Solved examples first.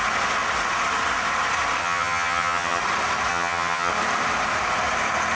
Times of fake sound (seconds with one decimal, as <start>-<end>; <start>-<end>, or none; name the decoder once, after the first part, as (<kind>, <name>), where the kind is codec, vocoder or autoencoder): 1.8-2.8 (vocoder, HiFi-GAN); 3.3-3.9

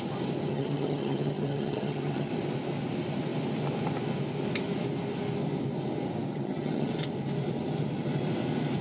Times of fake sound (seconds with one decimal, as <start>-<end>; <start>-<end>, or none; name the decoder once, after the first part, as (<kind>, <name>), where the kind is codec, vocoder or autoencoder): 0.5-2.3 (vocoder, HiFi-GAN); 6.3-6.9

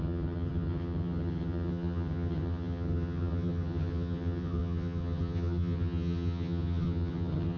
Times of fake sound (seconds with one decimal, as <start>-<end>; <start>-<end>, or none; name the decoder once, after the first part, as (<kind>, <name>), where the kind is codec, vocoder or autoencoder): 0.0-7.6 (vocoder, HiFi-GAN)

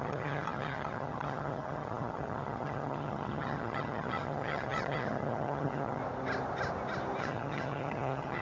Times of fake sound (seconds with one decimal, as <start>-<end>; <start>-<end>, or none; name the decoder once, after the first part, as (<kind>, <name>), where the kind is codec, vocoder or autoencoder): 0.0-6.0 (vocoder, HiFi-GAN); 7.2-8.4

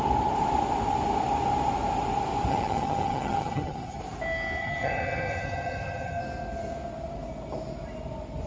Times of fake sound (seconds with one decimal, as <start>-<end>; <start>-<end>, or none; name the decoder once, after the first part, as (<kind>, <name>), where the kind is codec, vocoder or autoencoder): 2.5-4.0 (vocoder, HiFi-GAN); 4.6-6.2